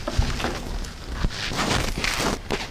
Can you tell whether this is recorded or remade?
recorded